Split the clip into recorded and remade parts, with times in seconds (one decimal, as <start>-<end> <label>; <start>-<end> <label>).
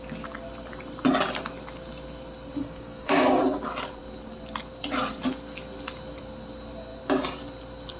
0.0-2.6 recorded; 2.6-3.4 remade; 3.4-8.0 recorded